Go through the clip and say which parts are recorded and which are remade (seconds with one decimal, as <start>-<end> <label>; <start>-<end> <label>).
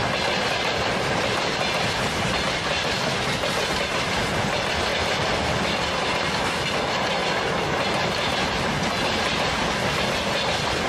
0.0-4.9 recorded; 4.9-7.1 remade; 7.1-8.0 recorded; 8.0-9.1 remade; 9.1-10.9 recorded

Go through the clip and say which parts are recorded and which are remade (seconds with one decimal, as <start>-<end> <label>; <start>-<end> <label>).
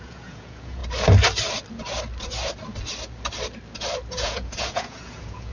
0.0-0.8 remade; 0.8-4.1 recorded; 4.1-5.5 remade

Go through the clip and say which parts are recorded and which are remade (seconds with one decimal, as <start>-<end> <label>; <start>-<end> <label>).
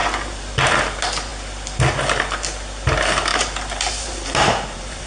0.0-0.6 remade; 0.6-3.3 recorded; 3.3-5.1 remade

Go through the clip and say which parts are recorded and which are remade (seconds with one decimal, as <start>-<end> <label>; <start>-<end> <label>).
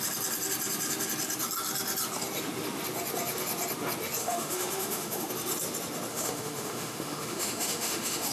0.0-4.2 recorded; 4.2-5.3 remade; 5.3-6.1 recorded; 6.1-8.3 remade